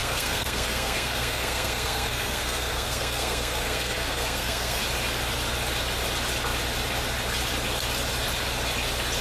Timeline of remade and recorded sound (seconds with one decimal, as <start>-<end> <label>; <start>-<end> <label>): 0.0-4.8 remade; 4.8-9.2 recorded